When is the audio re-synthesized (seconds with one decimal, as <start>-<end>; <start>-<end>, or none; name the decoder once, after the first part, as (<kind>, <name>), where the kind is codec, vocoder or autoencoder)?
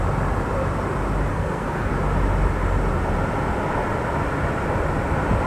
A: 1.3-1.9 (codec, SNAC)